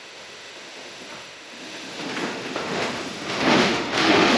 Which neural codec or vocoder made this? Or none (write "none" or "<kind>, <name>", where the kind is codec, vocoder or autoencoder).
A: autoencoder, DAC-VAE